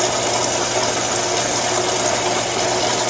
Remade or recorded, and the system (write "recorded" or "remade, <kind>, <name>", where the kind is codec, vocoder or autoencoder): recorded